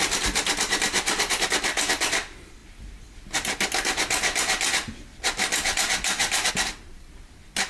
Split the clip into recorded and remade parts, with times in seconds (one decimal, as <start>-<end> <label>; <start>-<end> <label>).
0.0-7.7 recorded